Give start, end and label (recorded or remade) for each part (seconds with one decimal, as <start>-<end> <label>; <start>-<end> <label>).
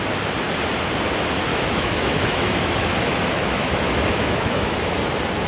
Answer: 0.0-1.5 recorded; 1.5-4.8 remade; 4.8-5.5 recorded